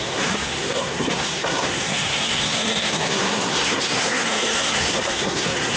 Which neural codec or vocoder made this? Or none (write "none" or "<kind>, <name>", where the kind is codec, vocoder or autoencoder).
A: codec, SNAC